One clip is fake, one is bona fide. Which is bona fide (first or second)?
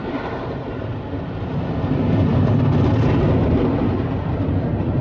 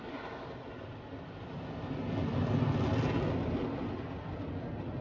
second